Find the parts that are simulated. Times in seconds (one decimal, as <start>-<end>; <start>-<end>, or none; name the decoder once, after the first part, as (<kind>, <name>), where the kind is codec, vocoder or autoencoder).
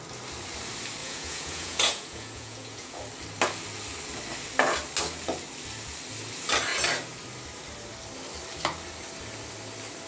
1.0-3.0 (vocoder, Vocos)